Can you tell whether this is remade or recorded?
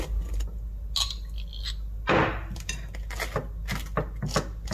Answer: recorded